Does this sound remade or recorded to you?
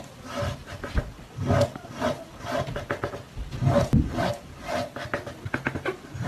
recorded